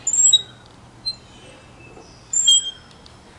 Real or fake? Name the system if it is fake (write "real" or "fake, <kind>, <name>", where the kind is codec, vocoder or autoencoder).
real